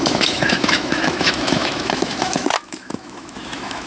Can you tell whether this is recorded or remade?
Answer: remade